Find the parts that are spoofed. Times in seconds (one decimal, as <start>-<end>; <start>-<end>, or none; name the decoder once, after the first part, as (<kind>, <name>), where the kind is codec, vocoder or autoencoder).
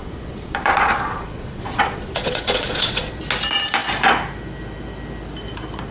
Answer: 0.0-3.2 (vocoder, Vocos)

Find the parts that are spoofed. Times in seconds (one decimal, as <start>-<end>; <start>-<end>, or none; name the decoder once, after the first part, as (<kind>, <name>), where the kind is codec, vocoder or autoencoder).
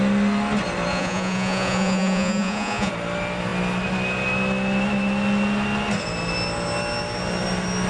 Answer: 0.9-2.9 (vocoder, Vocos)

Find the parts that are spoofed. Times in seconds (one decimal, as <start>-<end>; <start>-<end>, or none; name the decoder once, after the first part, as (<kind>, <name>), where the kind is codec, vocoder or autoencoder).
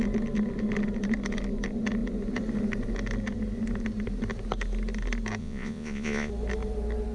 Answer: 5.4-6.3 (vocoder, Vocos)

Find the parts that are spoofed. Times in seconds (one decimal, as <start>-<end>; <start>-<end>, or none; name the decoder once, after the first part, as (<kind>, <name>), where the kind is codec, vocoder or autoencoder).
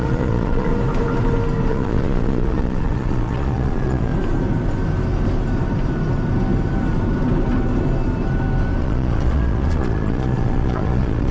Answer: 0.0-0.7 (vocoder, Vocos); 1.7-4.1; 8.8-11.3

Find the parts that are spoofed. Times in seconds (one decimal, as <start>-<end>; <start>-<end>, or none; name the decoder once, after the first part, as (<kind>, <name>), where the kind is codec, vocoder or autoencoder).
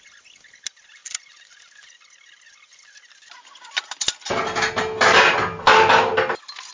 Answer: none